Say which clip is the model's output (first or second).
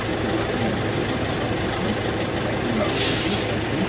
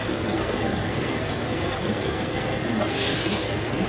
second